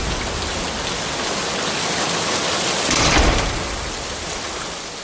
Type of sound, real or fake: real